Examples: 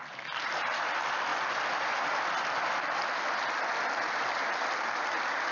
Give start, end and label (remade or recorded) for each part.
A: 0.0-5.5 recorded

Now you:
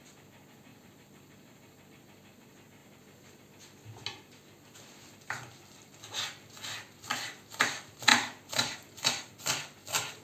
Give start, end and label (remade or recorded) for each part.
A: 0.0-0.7 recorded; 0.7-1.8 remade; 1.8-2.8 recorded; 2.8-3.4 remade; 3.4-10.2 recorded

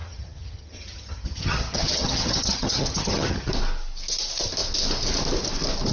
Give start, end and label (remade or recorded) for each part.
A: 0.0-3.5 remade; 3.5-5.9 recorded

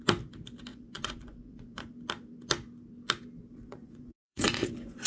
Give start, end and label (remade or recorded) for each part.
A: 0.0-0.7 recorded; 0.7-1.9 remade; 1.9-3.5 recorded; 3.5-5.1 remade

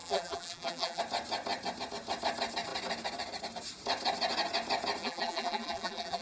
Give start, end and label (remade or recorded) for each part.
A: 0.0-1.0 remade; 1.0-5.0 recorded; 5.0-6.2 remade

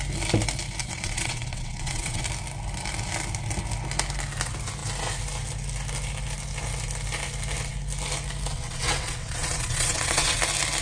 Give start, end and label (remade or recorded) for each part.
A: 0.0-0.8 recorded; 0.8-2.2 remade; 2.2-8.5 recorded; 8.5-10.4 remade; 10.4-10.8 recorded

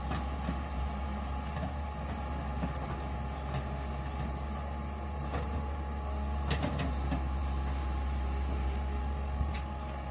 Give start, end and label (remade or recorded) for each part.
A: 0.0-10.1 recorded

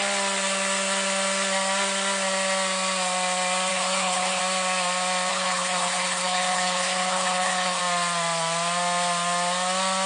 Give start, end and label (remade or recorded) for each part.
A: 0.0-3.7 recorded; 3.7-4.4 remade; 4.4-5.3 recorded; 5.3-7.8 remade; 7.8-10.1 recorded